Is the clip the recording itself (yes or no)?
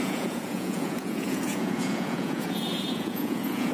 no